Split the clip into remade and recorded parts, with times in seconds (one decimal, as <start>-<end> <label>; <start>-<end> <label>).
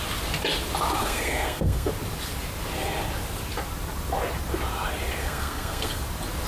0.0-1.0 recorded; 1.0-1.9 remade; 1.9-5.2 recorded; 5.2-6.0 remade; 6.0-6.5 recorded